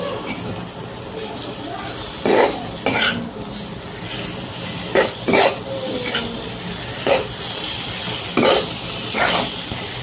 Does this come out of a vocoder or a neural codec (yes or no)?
no